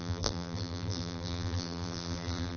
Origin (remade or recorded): remade